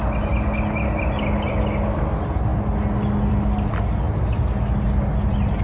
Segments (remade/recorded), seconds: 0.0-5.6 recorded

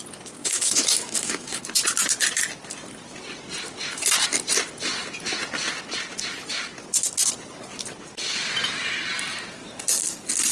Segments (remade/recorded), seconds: 0.0-0.4 recorded; 0.4-1.6 remade; 1.6-10.5 recorded

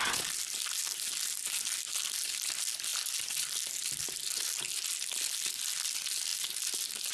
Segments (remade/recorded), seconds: 0.0-7.1 recorded

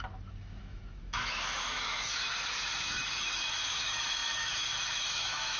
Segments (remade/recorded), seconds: 0.0-5.6 remade

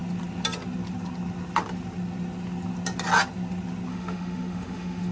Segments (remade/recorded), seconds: 0.0-3.9 recorded; 3.9-5.1 remade

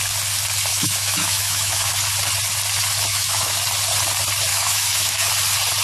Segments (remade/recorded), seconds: 0.0-0.7 recorded; 0.7-1.9 remade; 1.9-3.1 recorded; 3.1-3.6 remade; 3.6-4.5 recorded; 4.5-5.3 remade; 5.3-5.8 recorded

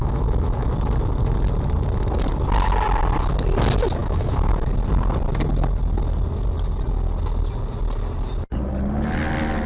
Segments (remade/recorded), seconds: 0.0-0.7 remade; 0.7-4.0 recorded; 4.0-4.7 remade; 4.7-9.7 recorded

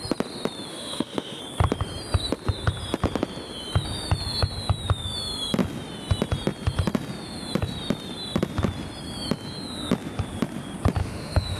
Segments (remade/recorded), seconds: 0.0-0.7 recorded; 0.7-1.4 remade; 1.4-11.0 recorded; 11.0-11.6 remade